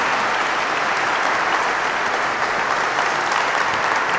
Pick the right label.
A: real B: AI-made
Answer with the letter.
A